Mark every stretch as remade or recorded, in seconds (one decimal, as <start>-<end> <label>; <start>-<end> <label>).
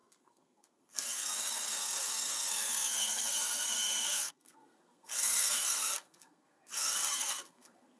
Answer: 0.0-8.0 remade